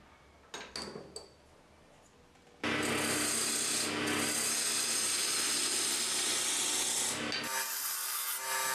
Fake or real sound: real